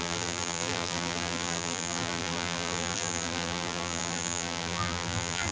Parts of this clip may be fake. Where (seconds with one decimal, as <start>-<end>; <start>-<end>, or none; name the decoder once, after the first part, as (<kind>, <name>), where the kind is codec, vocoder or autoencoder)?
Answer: 0.0-5.5 (vocoder, BigVGAN v2)